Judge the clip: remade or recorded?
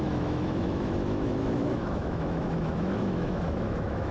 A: remade